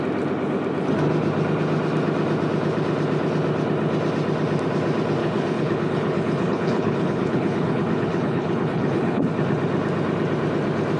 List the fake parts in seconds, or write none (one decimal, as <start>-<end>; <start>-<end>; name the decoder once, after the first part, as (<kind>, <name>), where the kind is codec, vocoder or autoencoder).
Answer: 5.2-9.3 (codec, HILCodec)